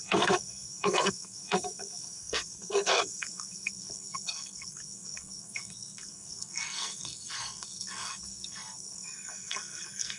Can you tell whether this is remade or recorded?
remade